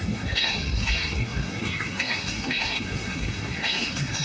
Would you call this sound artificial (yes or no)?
yes